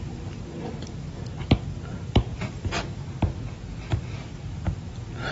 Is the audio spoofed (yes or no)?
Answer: no